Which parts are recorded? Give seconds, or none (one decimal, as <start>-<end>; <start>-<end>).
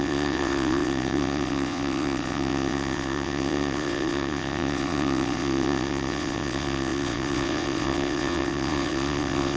none